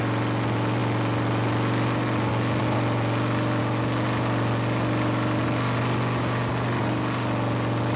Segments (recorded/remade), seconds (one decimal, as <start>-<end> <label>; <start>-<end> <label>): 0.0-8.0 recorded